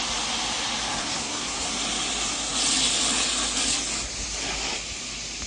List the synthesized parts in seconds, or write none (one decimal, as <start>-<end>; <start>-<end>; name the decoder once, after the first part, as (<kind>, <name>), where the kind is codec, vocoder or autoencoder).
0.9-1.7 (codec, SNAC)